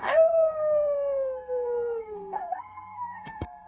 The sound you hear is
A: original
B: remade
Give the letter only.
B